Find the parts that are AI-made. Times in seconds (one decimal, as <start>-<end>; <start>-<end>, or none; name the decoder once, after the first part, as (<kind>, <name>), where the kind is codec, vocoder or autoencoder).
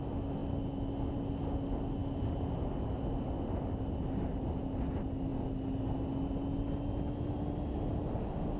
none